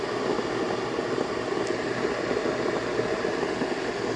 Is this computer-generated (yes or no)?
no